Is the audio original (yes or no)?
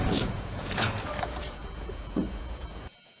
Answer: no